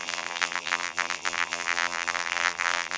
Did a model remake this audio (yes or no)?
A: yes